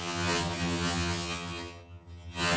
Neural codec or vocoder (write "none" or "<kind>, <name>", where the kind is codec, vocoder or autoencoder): vocoder, HiFi-GAN